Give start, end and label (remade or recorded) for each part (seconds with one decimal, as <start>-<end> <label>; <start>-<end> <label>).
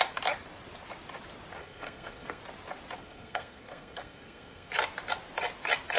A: 0.0-1.6 recorded; 1.6-2.4 remade; 2.4-3.0 recorded; 3.0-4.7 remade; 4.7-6.0 recorded